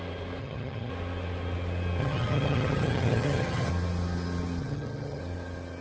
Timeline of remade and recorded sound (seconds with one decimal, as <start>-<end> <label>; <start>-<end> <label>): 0.0-0.4 recorded; 0.4-0.9 remade; 0.9-2.0 recorded; 2.0-3.7 remade; 3.7-4.6 recorded; 4.6-5.2 remade; 5.2-5.8 recorded

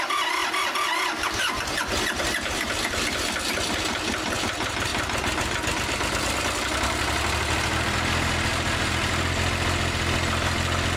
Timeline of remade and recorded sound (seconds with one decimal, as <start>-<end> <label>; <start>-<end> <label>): 0.0-11.0 recorded

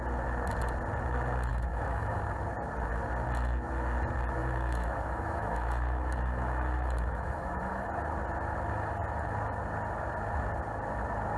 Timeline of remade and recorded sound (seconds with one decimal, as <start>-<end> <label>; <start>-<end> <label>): 0.0-1.5 recorded; 1.5-2.2 remade; 2.2-4.4 recorded; 4.4-7.9 remade; 7.9-11.4 recorded

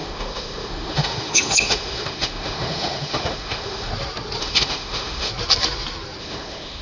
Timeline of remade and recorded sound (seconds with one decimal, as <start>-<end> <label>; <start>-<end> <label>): 0.0-3.9 remade; 3.9-4.4 recorded; 4.4-5.3 remade; 5.3-6.2 recorded; 6.2-6.8 remade

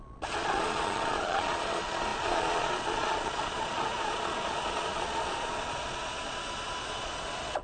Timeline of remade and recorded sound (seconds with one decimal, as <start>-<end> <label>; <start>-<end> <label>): 0.0-7.6 remade